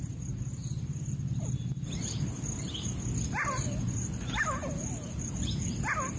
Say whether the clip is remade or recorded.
recorded